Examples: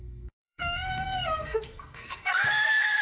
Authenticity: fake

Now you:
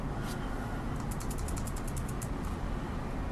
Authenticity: real